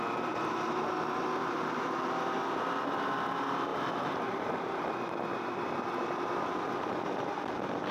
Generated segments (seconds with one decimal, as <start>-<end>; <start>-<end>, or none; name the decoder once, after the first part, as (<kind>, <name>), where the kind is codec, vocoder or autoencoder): 1.4-2.0 (vocoder, BigVGAN v2); 3.7-4.9